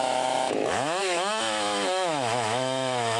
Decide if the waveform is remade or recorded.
remade